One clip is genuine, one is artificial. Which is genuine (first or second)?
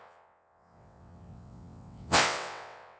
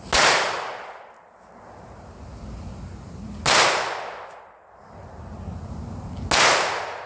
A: second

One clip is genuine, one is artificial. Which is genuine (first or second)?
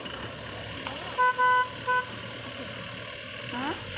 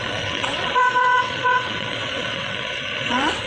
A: first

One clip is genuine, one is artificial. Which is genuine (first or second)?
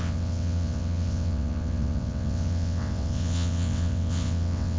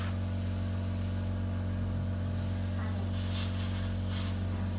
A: second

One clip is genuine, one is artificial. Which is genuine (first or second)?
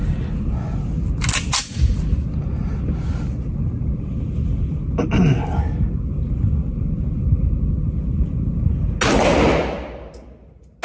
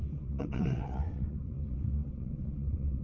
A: first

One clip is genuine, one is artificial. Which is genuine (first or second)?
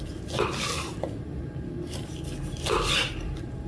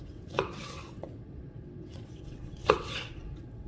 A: first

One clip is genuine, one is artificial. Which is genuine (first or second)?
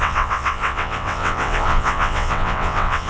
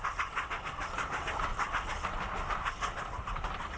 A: second